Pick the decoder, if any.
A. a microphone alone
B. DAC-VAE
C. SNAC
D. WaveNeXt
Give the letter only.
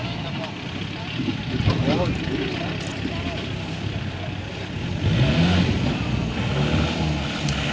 A